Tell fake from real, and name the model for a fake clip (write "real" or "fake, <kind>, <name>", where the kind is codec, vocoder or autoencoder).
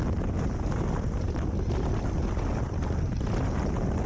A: real